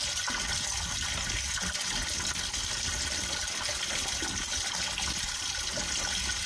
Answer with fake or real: real